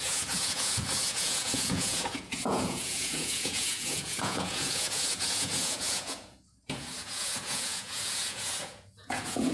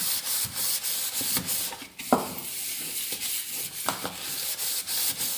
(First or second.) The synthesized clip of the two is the first